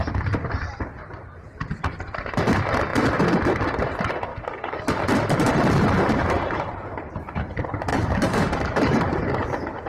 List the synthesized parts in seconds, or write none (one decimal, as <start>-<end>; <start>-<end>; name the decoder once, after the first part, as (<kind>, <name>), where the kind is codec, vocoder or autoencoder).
4.3-4.8 (codec, DAC); 7.9-9.0